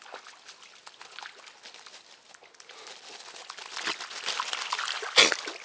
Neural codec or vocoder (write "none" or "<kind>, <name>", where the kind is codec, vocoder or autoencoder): none